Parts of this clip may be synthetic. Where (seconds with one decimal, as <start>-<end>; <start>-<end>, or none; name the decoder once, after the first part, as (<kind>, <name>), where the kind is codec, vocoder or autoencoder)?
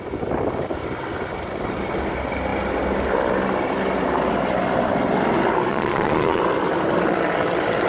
5.7-6.4 (vocoder, Vocos)